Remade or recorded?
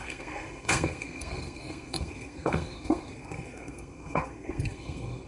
remade